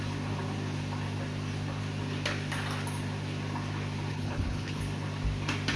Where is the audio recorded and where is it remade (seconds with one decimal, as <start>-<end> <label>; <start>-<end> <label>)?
0.0-4.1 recorded; 4.1-4.8 remade; 4.8-5.8 recorded